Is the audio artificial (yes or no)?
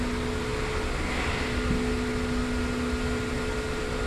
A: no